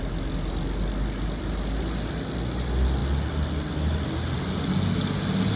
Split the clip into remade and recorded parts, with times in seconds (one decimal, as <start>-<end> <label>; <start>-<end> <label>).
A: 0.0-5.6 recorded